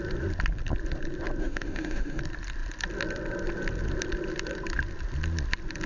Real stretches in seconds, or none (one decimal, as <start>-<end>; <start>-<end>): 0.0-1.4; 2.2-5.9